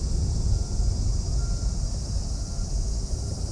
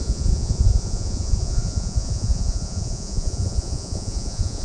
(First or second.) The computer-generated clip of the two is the second